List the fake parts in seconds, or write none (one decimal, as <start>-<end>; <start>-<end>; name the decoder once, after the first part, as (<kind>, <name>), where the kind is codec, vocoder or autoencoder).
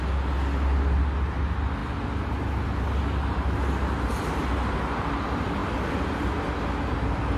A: none